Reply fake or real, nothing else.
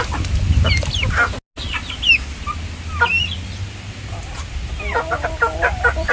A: real